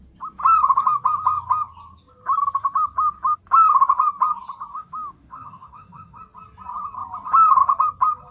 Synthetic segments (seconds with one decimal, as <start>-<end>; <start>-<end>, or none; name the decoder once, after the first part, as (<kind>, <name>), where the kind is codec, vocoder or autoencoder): 4.7-6.2 (autoencoder, DAC-VAE)